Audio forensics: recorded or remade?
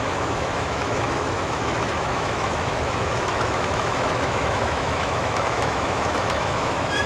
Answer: remade